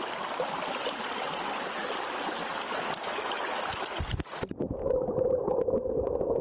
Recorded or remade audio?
recorded